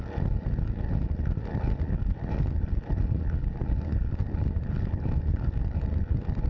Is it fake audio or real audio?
real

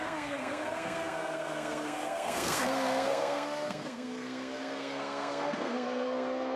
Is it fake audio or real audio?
fake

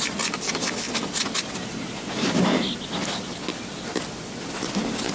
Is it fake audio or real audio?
real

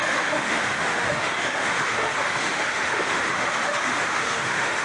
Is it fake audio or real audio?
fake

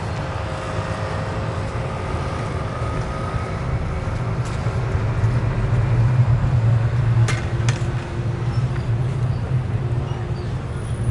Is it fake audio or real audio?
real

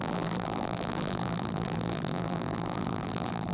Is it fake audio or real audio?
fake